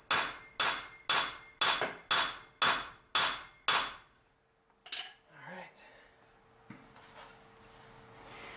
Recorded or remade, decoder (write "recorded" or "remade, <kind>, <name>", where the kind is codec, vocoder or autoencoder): recorded